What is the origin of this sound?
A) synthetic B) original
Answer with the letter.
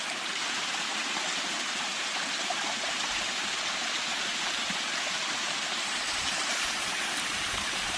A